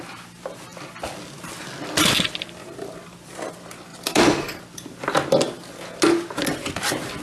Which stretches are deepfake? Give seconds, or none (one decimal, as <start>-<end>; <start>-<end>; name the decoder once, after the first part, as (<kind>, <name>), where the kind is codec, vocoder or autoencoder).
3.9-4.6 (vocoder, BigVGAN v2)